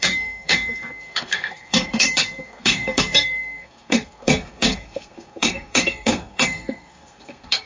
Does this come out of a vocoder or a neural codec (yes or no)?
yes